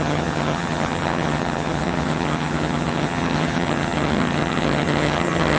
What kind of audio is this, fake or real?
fake